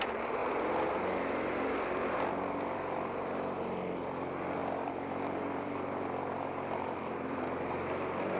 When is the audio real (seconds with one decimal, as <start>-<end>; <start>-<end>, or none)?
0.0-4.6